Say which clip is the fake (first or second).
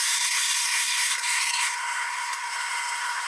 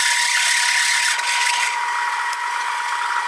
first